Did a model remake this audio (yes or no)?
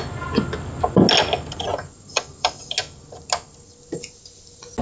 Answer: no